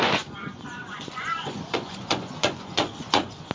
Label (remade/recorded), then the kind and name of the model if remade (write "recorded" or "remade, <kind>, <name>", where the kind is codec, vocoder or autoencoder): remade, vocoder, Vocos